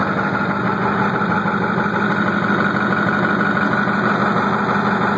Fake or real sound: real